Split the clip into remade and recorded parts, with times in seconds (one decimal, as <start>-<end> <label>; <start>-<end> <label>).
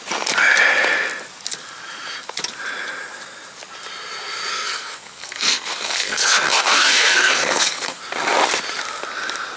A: 0.0-4.5 recorded; 4.5-8.0 remade; 8.0-9.6 recorded